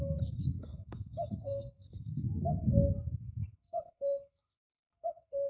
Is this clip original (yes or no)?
no